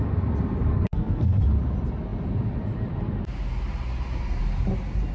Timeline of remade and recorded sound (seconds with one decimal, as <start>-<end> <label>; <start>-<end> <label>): 0.0-0.7 recorded; 0.7-1.4 remade; 1.4-5.1 recorded